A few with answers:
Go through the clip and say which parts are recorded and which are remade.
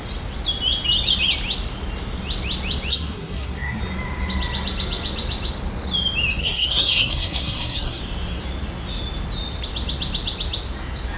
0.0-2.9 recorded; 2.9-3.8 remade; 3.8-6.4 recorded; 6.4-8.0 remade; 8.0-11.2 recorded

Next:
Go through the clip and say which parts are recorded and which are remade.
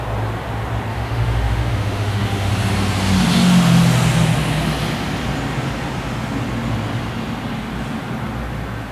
0.0-0.9 recorded; 0.9-2.5 remade; 2.5-8.9 recorded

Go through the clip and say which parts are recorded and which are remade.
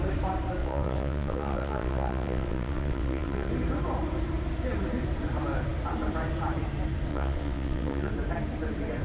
0.0-0.6 recorded; 0.6-3.5 remade; 3.5-7.1 recorded; 7.1-8.1 remade; 8.1-9.0 recorded